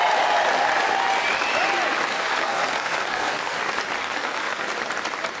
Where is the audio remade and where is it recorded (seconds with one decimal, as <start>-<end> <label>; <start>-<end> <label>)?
0.0-2.1 recorded; 2.1-3.6 remade; 3.6-4.0 recorded; 4.0-4.7 remade; 4.7-5.4 recorded

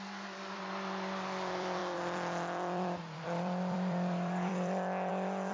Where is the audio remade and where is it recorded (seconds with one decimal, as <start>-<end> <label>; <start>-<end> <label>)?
0.0-5.5 remade

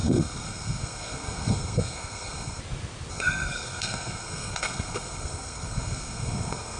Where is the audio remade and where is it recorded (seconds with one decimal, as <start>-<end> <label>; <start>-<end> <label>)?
0.0-2.6 remade; 2.6-3.1 recorded; 3.1-6.8 remade

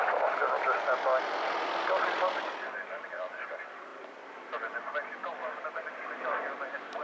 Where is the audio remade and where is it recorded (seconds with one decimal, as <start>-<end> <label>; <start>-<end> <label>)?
0.0-7.0 remade

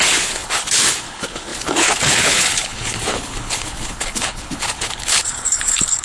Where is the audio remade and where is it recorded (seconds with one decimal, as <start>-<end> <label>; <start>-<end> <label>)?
0.0-6.0 remade

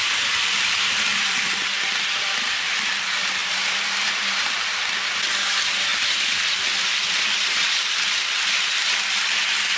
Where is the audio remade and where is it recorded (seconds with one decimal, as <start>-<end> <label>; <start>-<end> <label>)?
0.0-9.8 remade